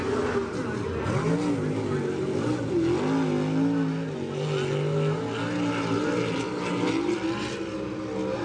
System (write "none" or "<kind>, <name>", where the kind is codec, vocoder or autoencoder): none